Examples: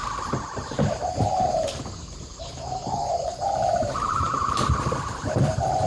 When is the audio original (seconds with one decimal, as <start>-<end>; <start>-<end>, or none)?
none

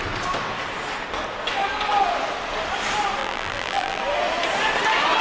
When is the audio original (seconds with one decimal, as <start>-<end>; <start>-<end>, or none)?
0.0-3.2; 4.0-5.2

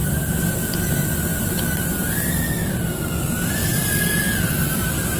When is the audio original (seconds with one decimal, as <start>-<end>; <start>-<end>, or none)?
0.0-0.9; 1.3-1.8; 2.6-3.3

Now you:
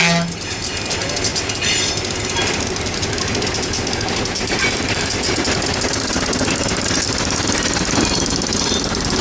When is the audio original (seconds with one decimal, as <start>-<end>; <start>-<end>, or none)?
0.0-9.2

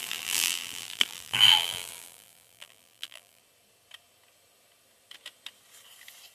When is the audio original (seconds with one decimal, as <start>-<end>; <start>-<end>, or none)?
3.4-6.3

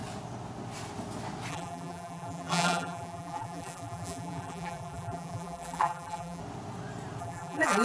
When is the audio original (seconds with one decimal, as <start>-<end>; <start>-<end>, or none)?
0.0-1.5; 6.4-7.2

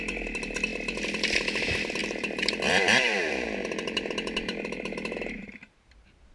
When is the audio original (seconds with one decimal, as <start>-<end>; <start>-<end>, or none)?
0.0-2.0; 5.8-6.3

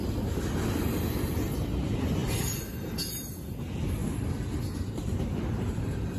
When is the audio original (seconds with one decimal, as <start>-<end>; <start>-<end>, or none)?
0.0-6.2